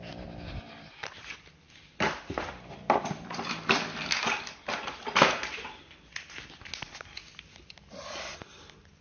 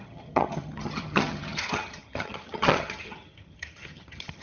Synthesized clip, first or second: second